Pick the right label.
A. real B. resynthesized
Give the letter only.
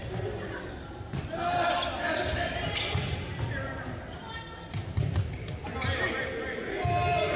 A